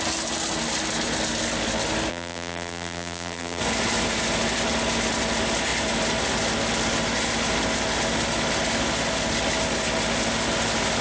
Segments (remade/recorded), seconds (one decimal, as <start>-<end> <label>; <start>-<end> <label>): 0.0-2.1 recorded; 2.1-3.6 remade; 3.6-11.0 recorded